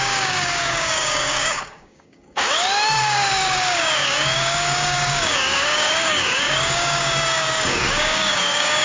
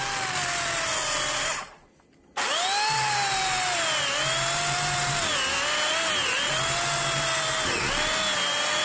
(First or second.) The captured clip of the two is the second